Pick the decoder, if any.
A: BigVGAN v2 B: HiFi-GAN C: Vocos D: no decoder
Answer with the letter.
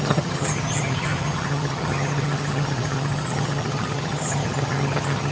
B